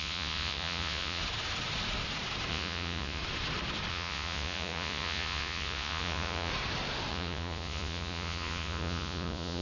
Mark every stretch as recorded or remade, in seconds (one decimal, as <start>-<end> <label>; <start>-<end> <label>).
0.0-1.2 remade; 1.2-2.5 recorded; 2.5-3.2 remade; 3.2-3.9 recorded; 3.9-6.5 remade; 6.5-7.1 recorded; 7.1-9.6 remade